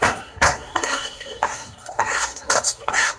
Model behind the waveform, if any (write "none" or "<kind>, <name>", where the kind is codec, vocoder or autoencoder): codec, SNAC